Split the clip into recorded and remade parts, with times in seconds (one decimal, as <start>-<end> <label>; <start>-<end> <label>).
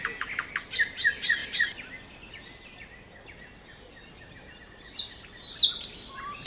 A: 0.0-6.5 recorded